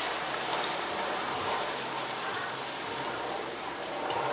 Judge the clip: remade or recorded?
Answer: remade